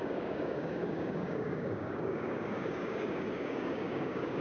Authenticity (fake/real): fake